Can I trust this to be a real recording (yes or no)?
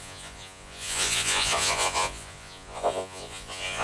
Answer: no